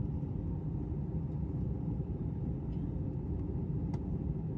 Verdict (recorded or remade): recorded